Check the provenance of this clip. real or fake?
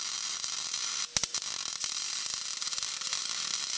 real